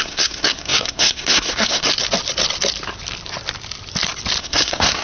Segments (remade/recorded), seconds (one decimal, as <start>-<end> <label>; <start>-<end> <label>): 0.0-1.9 remade; 1.9-4.4 recorded; 4.4-5.0 remade

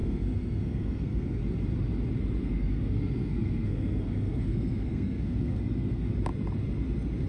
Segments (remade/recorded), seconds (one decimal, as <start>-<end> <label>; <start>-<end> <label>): 0.0-1.4 remade; 1.4-2.4 recorded; 2.4-6.1 remade; 6.1-7.3 recorded

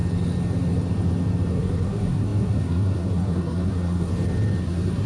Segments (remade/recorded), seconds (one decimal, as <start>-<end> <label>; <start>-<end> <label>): 0.0-1.5 recorded; 1.5-4.1 remade; 4.1-4.6 recorded; 4.6-5.1 remade

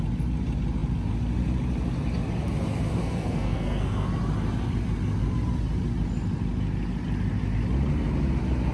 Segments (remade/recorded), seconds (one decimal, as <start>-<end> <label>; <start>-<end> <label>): 0.0-3.0 recorded; 3.0-4.1 remade; 4.1-8.7 recorded

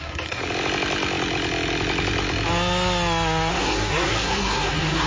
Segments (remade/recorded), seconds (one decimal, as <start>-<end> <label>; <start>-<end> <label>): 0.0-0.4 remade; 0.4-3.5 recorded; 3.5-5.1 remade

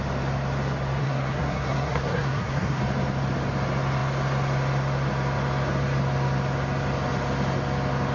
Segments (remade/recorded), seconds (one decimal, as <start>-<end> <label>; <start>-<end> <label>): 0.0-1.0 recorded; 1.0-2.8 remade; 2.8-8.1 recorded